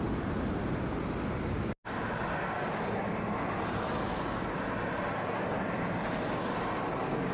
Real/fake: real